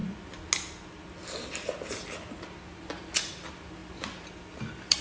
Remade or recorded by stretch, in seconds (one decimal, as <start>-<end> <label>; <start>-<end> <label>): 0.0-3.8 recorded; 3.8-5.0 remade